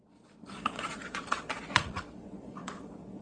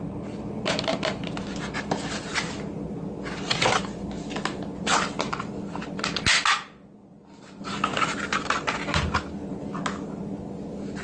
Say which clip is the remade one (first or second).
first